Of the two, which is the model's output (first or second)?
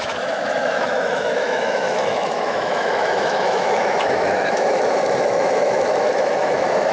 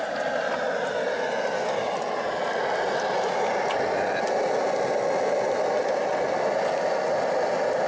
first